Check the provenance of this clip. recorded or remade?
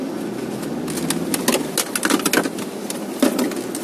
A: recorded